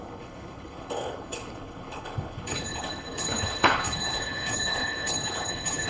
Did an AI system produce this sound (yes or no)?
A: yes